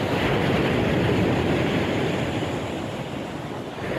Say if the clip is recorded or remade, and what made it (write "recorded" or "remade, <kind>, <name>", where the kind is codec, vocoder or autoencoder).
recorded